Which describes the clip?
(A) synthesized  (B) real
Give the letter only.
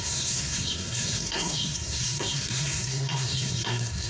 A